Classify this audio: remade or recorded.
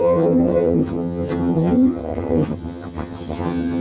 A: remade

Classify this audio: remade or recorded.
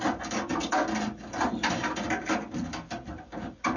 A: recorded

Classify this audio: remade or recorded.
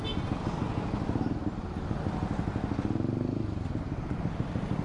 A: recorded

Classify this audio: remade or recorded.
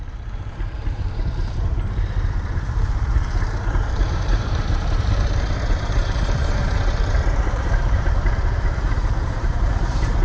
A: remade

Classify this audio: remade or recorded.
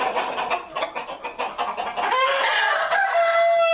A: recorded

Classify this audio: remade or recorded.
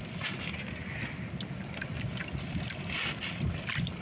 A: recorded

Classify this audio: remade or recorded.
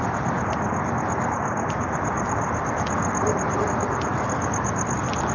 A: recorded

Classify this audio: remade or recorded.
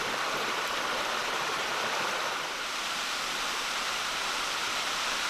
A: remade